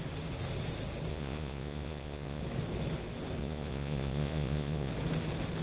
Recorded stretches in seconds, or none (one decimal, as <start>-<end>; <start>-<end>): 0.0-1.1; 2.4-3.4; 4.9-5.6

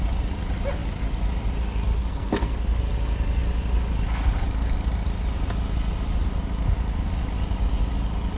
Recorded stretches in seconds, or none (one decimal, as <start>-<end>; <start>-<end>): 0.0-1.9; 2.8-8.4